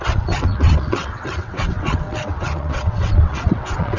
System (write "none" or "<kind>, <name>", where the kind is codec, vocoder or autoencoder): vocoder, WaveNeXt